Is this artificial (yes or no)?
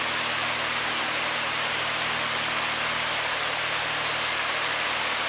no